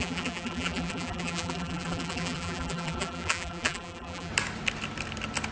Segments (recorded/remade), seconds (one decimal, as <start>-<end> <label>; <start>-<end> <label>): 0.0-4.3 remade; 4.3-5.5 recorded